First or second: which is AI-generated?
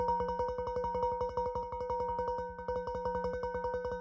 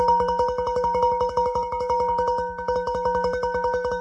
second